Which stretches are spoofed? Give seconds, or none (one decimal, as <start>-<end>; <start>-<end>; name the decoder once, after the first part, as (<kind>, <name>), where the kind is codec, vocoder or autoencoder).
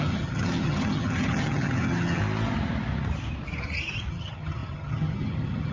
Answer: 0.0-2.2 (vocoder, HiFi-GAN); 4.1-5.7